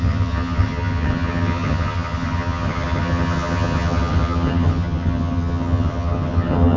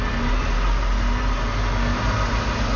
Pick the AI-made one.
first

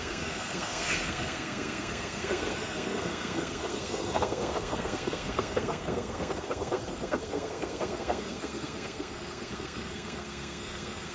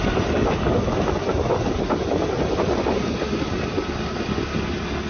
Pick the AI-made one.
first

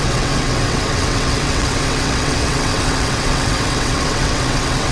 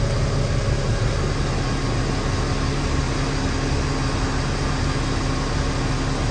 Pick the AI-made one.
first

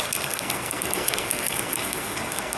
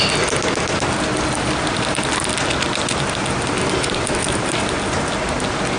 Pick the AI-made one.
first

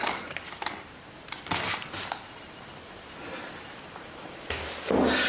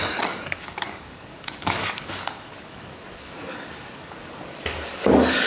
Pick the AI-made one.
second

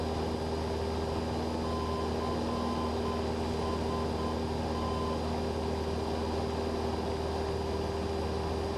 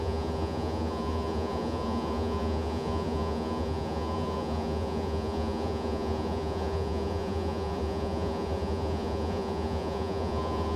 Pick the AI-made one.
second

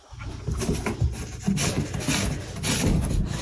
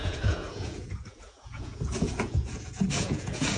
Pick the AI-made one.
second